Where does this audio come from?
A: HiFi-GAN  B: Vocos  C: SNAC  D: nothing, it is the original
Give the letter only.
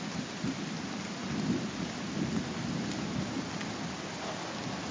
D